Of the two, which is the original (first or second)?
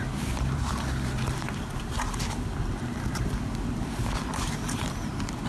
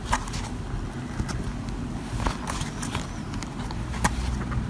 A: second